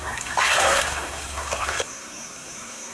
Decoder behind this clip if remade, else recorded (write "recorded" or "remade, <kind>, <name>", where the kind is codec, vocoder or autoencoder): remade, codec, SNAC